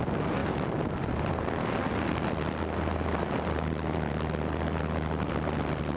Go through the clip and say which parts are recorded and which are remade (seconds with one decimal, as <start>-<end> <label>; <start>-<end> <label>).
0.0-6.0 recorded